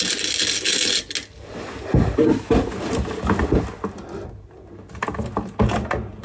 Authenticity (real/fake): real